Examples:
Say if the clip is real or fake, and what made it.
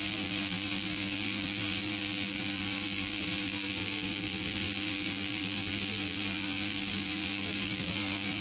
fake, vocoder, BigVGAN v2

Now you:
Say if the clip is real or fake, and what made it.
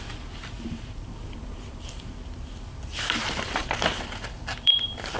fake, vocoder, BigVGAN v2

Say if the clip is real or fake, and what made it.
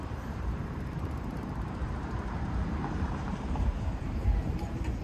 fake, vocoder, BigVGAN v2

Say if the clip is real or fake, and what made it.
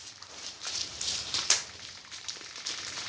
fake, vocoder, BigVGAN v2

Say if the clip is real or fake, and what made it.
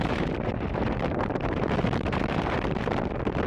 fake, vocoder, BigVGAN v2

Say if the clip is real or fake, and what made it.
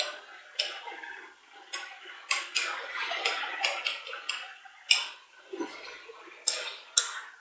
real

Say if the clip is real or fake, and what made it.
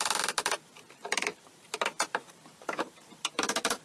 fake, vocoder, BigVGAN v2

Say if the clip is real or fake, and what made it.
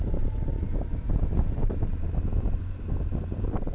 fake, vocoder, BigVGAN v2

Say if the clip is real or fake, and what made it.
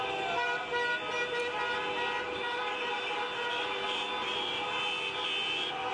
real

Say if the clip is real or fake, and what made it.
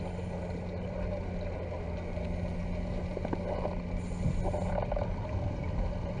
real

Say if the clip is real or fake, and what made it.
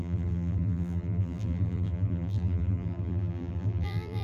fake, vocoder, BigVGAN v2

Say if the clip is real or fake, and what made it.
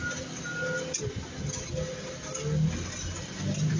real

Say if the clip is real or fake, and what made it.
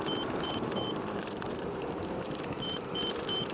fake, vocoder, BigVGAN v2